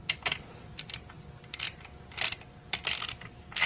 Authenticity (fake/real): real